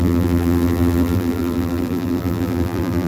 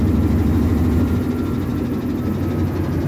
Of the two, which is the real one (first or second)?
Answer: second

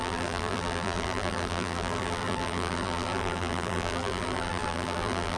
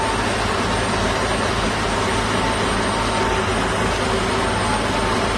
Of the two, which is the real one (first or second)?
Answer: second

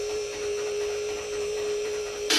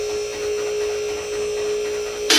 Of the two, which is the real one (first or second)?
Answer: second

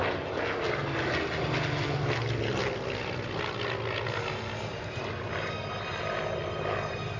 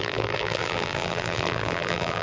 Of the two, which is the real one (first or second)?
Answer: first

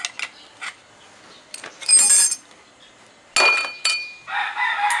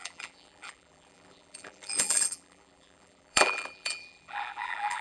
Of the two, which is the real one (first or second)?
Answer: first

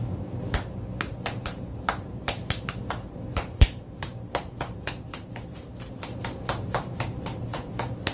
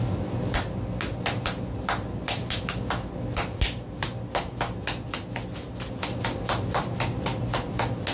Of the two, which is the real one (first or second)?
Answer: second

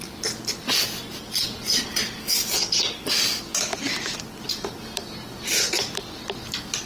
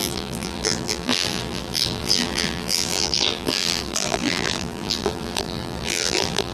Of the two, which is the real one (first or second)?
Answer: first